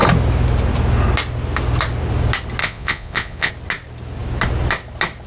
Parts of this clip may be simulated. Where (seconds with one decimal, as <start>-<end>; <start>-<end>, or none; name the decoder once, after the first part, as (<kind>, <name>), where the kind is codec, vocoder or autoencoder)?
2.6-3.5 (vocoder, Vocos)